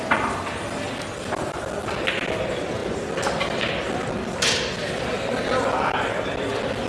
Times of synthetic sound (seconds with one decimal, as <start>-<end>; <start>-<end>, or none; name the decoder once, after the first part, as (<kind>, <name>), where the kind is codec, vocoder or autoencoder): none